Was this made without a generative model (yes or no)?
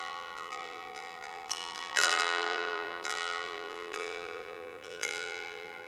no